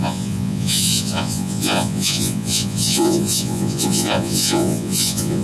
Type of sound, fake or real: fake